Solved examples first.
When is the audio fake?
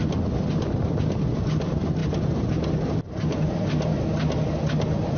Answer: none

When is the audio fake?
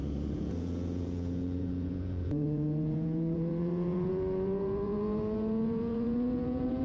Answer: 0.0-6.8 (vocoder, Vocos)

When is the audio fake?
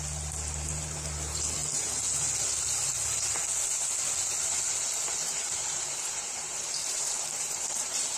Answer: 5.2-8.2 (vocoder, BigVGAN v2)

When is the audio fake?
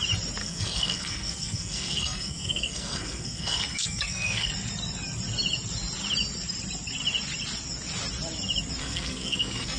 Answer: 0.4-4.5 (codec, SNAC); 8.8-9.8